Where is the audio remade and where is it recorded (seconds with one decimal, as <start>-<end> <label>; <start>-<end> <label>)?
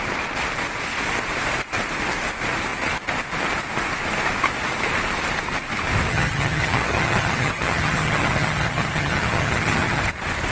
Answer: 0.0-6.1 recorded; 6.1-10.0 remade; 10.0-10.5 recorded